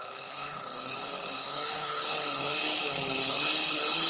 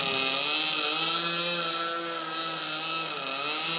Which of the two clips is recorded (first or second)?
second